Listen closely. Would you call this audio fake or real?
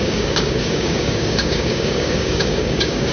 fake